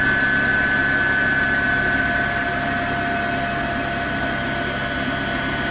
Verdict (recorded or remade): recorded